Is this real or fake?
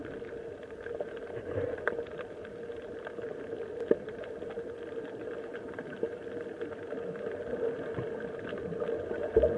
real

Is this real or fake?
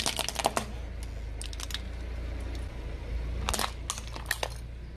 real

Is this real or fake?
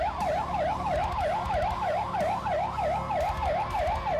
real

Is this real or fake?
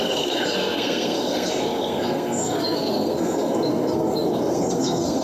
fake